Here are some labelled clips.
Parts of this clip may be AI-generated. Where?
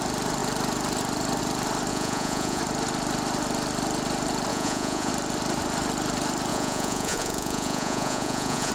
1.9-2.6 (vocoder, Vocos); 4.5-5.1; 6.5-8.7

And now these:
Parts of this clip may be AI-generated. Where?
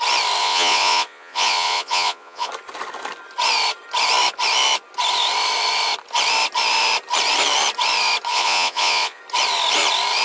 0.4-2.5 (vocoder, Vocos); 8.3-9.2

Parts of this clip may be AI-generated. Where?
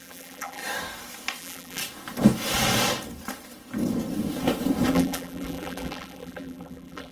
0.0-0.6 (vocoder, BigVGAN v2); 1.4-1.8; 4.9-7.1